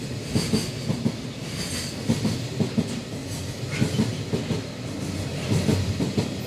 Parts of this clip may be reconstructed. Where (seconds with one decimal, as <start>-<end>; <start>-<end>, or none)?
none